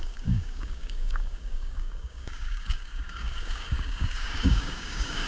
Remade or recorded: remade